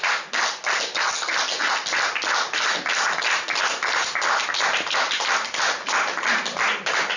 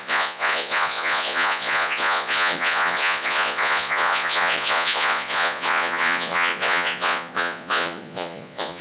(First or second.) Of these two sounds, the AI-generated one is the second